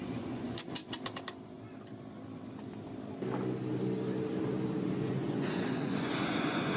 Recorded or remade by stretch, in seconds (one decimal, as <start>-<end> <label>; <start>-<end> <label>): 0.0-0.8 remade; 0.8-4.8 recorded; 4.8-6.8 remade